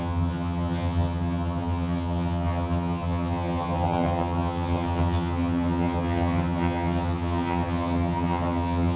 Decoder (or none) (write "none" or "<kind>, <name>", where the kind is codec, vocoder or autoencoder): vocoder, HiFi-GAN